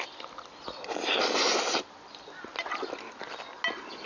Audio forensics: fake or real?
real